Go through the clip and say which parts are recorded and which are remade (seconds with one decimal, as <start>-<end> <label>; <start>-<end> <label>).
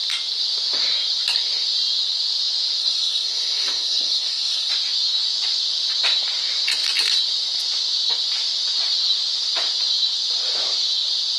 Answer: 0.0-2.8 recorded; 2.8-4.7 remade; 4.7-11.4 recorded